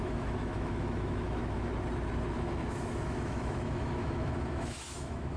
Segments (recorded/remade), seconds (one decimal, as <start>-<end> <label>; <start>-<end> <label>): 0.0-1.7 remade; 1.7-2.3 recorded; 2.3-5.4 remade